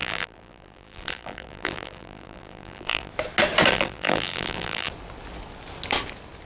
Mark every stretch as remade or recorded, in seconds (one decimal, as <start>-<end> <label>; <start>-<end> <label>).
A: 0.0-3.1 remade; 3.1-3.7 recorded; 3.7-4.9 remade; 4.9-6.5 recorded